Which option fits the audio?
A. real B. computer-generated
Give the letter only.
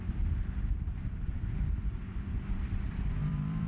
B